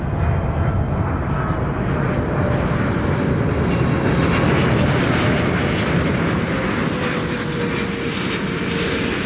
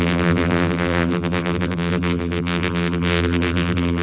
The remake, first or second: second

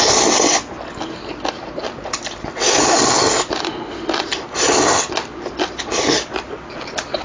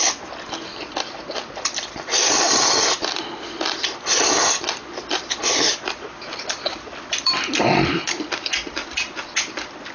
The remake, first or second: second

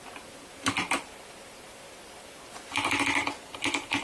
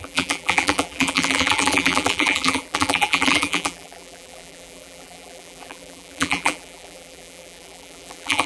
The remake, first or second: second